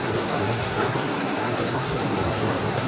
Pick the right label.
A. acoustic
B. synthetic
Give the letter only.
B